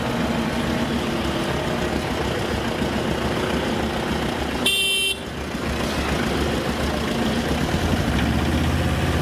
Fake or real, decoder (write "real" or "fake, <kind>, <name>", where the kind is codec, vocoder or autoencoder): real